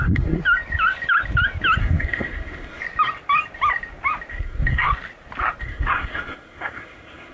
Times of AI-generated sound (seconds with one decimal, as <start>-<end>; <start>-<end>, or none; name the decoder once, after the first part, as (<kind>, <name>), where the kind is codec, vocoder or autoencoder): 0.0-0.4 (codec, SNAC); 1.8-2.8; 4.3-4.9; 5.6-7.3